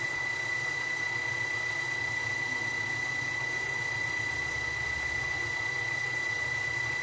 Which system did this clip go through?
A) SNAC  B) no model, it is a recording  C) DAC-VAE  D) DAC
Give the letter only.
B